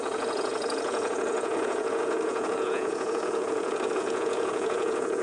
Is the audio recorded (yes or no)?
no